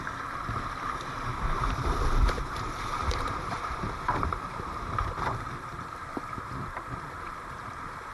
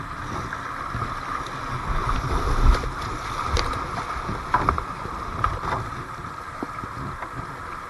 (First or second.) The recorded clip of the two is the second